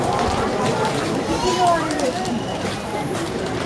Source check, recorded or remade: remade